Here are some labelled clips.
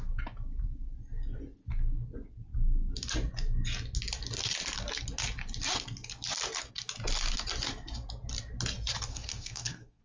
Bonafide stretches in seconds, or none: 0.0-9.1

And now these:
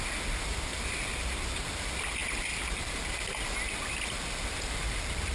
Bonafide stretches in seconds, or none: 0.0-5.3

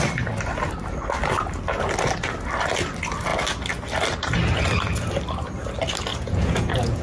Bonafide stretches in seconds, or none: 0.0-6.1

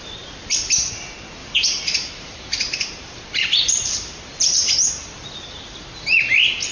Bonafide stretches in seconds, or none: 0.0-1.4; 4.9-6.7

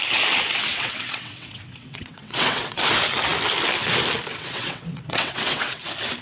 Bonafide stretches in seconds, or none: 0.0-0.7; 2.8-4.3; 5.8-6.2

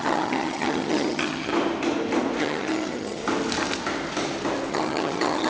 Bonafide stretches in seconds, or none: 1.5-2.4; 3.2-4.7